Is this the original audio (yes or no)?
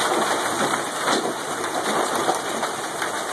yes